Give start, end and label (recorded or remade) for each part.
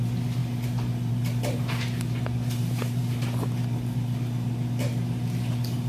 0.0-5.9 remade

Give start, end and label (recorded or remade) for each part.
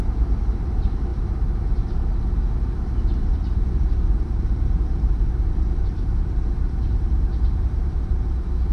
0.0-8.7 remade